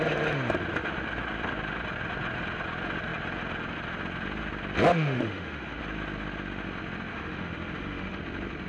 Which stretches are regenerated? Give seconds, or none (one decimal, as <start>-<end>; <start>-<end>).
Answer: 4.9-5.8; 7.1-8.2